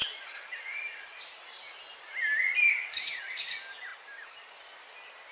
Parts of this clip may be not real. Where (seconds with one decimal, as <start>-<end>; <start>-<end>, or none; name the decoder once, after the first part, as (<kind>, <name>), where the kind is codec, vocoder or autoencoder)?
0.0-3.2 (vocoder, BigVGAN v2); 3.9-4.5